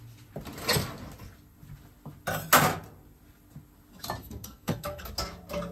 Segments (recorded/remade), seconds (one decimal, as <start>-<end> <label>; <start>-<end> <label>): 0.0-4.2 recorded; 4.2-5.1 remade; 5.1-5.7 recorded